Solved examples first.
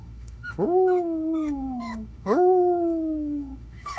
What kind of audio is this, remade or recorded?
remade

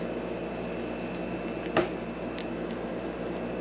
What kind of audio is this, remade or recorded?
recorded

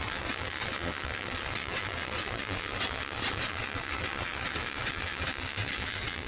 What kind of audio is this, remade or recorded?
remade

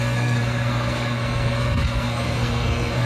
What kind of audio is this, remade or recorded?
remade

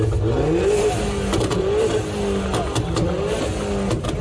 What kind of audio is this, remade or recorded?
recorded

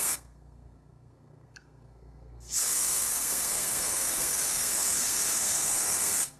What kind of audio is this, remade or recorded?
remade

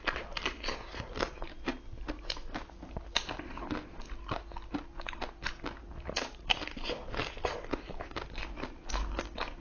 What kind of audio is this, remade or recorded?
recorded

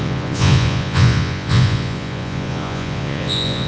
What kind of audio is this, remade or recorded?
remade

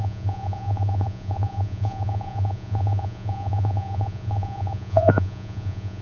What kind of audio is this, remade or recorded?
remade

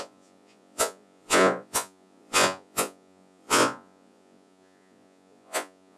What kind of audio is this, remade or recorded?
remade